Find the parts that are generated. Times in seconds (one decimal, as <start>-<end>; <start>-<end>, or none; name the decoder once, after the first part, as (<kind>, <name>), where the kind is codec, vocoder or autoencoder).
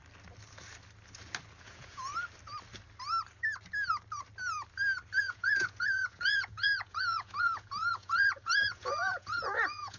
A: 1.6-2.1 (vocoder, Vocos); 5.2-10.0